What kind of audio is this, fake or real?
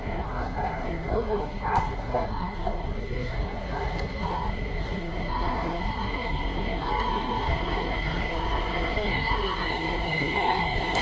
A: fake